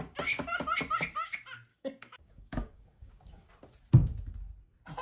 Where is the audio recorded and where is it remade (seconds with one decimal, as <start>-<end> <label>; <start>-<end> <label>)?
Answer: 0.0-1.7 recorded; 1.7-3.5 remade; 3.5-5.0 recorded